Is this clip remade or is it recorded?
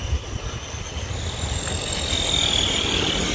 recorded